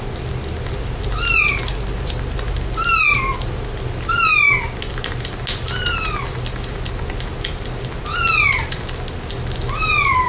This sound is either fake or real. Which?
real